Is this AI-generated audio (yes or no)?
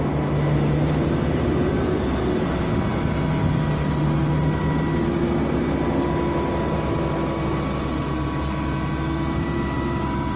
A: no